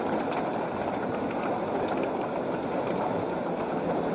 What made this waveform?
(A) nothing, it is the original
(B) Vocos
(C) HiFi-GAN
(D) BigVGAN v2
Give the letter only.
A